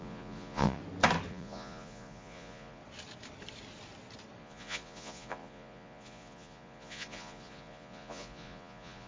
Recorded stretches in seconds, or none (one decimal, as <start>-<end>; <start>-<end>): 0.8-1.3; 2.8-4.4